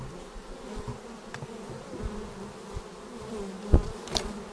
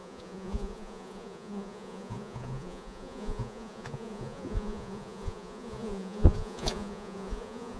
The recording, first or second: first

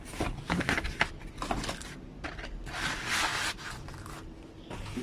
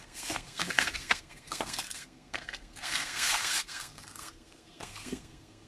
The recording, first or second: first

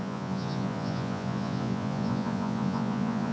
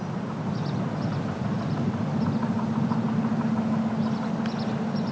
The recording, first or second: second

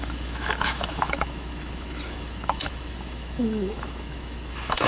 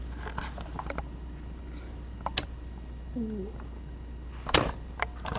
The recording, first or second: second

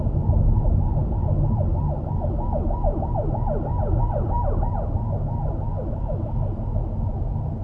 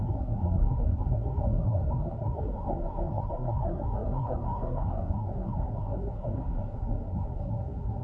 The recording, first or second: first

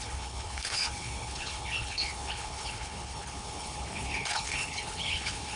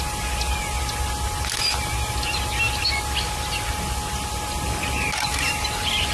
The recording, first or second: second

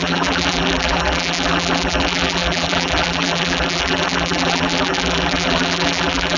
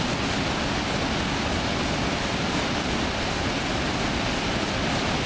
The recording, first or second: second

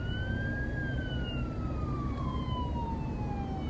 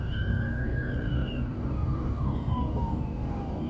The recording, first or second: first